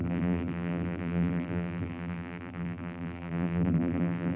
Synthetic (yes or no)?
yes